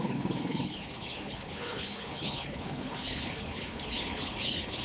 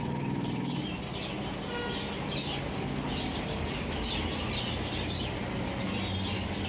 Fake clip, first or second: first